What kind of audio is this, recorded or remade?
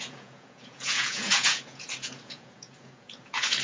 remade